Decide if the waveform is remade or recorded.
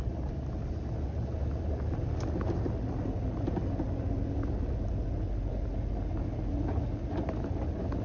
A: recorded